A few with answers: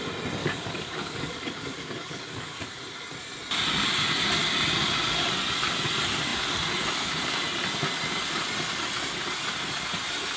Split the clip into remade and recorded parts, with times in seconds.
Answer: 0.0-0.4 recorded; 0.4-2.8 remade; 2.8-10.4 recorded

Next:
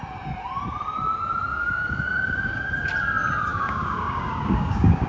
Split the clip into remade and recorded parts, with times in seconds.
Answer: 0.0-1.5 recorded; 1.5-2.7 remade; 2.7-3.5 recorded; 3.5-5.1 remade

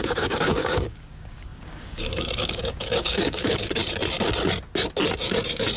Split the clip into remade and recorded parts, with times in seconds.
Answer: 0.0-3.8 remade; 3.8-5.8 recorded

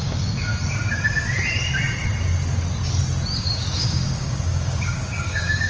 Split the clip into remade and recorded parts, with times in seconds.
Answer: 0.0-0.5 remade; 0.5-3.4 recorded; 3.4-5.7 remade

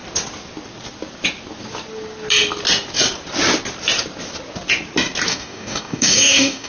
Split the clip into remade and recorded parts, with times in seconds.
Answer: 0.0-5.3 recorded; 5.3-6.7 remade